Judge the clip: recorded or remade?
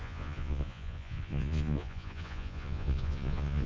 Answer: remade